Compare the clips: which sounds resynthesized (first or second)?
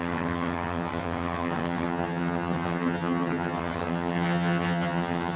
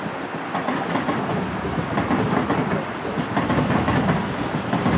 first